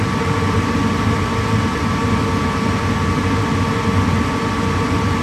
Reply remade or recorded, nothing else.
recorded